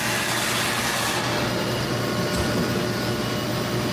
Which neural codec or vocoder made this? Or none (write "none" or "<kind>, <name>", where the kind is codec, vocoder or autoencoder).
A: none